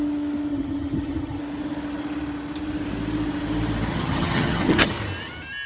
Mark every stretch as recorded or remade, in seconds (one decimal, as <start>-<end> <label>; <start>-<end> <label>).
0.0-0.5 recorded; 0.5-1.4 remade; 1.4-3.9 recorded; 3.9-4.9 remade; 4.9-5.7 recorded